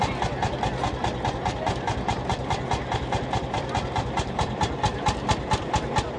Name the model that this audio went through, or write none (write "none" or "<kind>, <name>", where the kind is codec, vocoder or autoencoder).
none